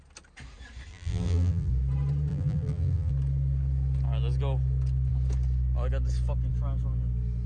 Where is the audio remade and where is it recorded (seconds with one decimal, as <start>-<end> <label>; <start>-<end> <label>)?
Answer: 0.0-0.9 recorded; 0.9-1.7 remade; 1.7-2.3 recorded; 2.3-3.1 remade; 3.1-7.5 recorded